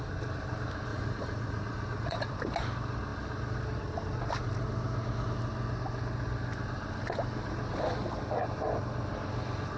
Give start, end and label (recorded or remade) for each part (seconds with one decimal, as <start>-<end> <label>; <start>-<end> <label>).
0.0-0.9 recorded; 0.9-2.3 remade; 2.3-9.8 recorded